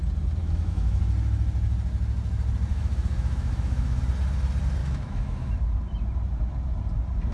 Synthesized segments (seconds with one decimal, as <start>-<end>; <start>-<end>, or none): 0.4-1.0; 2.7-4.0; 4.8-5.5